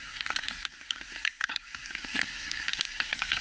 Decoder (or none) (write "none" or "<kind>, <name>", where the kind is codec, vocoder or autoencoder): codec, SNAC